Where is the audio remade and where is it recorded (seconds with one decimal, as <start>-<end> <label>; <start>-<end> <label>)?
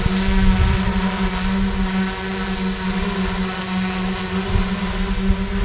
0.0-5.6 recorded